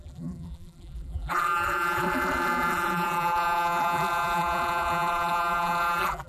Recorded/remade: remade